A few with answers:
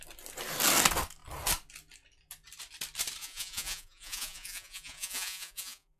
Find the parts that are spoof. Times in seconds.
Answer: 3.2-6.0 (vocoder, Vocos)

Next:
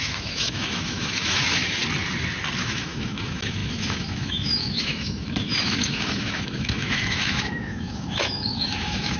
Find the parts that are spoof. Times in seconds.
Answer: 0.0-1.8 (autoencoder, DAC-VAE); 2.6-9.2

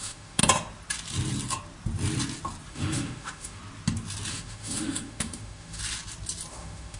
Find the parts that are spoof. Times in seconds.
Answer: 0.0-0.4 (autoencoder, DAC-VAE); 2.7-3.6; 4.3-5.8; 6.5-7.0